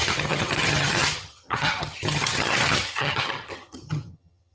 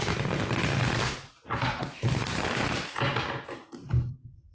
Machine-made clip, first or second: first